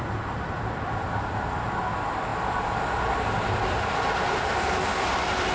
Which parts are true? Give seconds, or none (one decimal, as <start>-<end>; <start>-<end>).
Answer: none